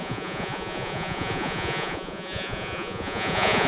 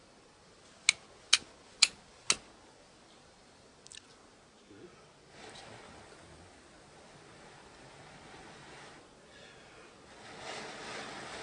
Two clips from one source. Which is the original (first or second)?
second